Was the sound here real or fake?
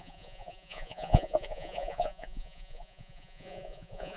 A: fake